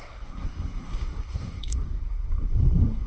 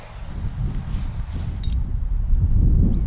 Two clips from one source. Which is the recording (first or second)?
second